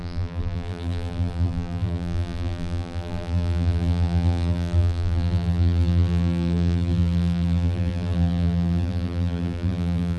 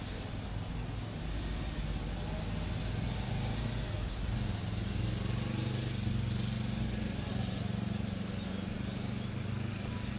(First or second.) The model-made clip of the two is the first